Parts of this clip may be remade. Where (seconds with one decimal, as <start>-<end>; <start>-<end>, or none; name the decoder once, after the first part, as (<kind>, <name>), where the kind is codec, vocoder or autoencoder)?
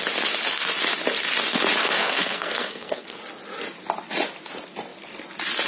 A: 1.8-3.2 (codec, SNAC)